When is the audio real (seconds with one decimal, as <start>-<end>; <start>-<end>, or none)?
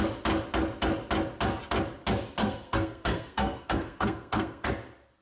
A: 0.0-2.4; 4.7-5.2